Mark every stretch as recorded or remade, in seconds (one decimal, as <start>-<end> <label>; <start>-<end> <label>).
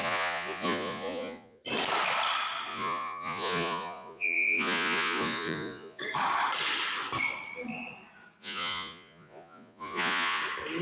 0.0-1.6 remade; 1.6-2.7 recorded; 2.7-6.0 remade; 6.0-8.4 recorded; 8.4-10.4 remade; 10.4-10.8 recorded